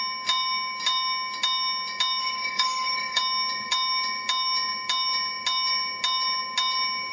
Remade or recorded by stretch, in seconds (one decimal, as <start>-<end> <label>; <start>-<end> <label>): 0.0-2.2 recorded; 2.2-3.2 remade; 3.2-7.1 recorded